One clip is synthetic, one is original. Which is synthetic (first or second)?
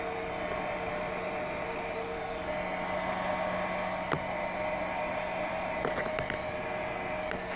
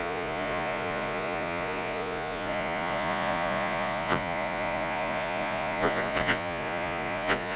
second